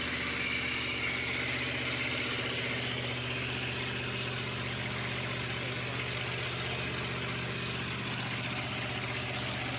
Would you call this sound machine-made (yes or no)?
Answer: no